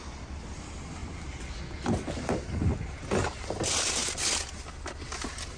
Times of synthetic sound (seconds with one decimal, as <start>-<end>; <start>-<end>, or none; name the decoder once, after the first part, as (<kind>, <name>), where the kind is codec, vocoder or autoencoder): none